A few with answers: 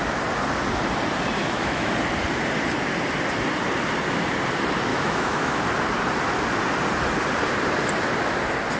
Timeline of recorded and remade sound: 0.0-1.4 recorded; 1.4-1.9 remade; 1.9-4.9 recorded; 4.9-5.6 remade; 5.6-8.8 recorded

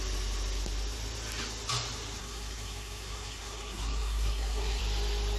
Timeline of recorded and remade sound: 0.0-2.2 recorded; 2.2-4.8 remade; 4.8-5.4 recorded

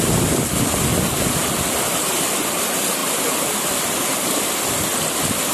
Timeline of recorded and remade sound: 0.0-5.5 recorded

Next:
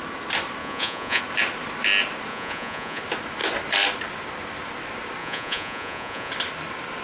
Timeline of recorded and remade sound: 0.0-0.6 recorded; 0.6-1.2 remade; 1.2-2.3 recorded; 2.3-3.0 remade; 3.0-5.2 recorded; 5.2-6.3 remade; 6.3-7.0 recorded

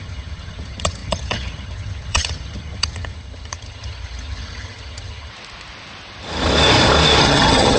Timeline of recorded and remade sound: 0.0-5.3 remade; 5.3-7.2 recorded; 7.2-7.8 remade